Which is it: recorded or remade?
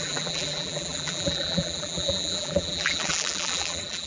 remade